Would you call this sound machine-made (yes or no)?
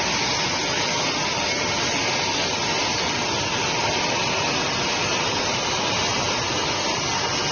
no